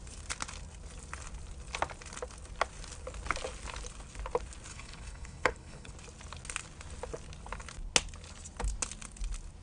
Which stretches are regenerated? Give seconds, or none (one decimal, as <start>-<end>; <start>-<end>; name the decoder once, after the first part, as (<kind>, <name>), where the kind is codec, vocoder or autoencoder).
4.7-5.9 (codec, HILCodec)